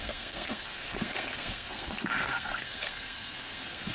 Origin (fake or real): fake